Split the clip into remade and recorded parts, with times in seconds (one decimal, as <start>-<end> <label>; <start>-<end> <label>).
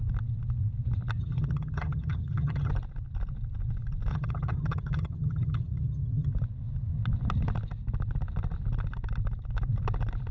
0.0-1.2 recorded; 1.2-2.7 remade; 2.7-4.1 recorded; 4.1-6.3 remade; 6.3-10.3 recorded